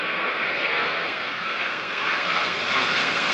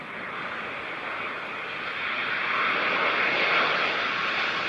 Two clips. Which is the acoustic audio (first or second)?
second